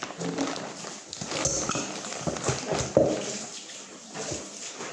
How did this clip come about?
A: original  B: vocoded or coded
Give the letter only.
A